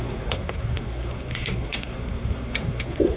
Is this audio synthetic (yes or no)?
yes